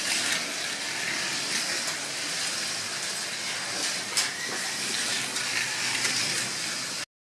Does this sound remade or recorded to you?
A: recorded